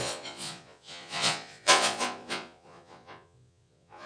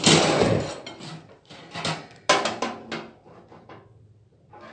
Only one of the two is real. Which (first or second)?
second